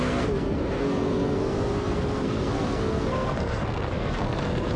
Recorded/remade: remade